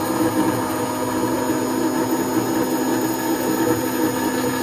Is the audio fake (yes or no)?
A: no